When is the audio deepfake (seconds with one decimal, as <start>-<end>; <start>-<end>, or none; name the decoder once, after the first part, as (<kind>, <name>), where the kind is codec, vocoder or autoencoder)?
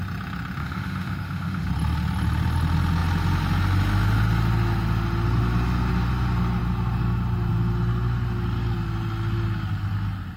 0.6-1.7 (autoencoder, DAC-VAE)